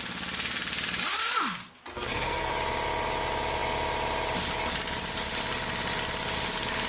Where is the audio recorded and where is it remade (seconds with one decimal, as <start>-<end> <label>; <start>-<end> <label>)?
0.0-1.9 recorded; 1.9-2.5 remade; 2.5-6.9 recorded